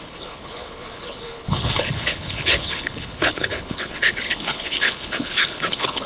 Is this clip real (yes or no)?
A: no